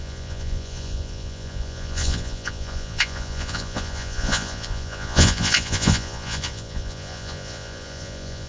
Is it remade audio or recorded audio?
remade